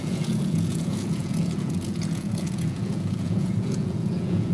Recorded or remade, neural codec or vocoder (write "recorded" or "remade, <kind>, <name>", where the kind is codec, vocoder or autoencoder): remade, vocoder, Vocos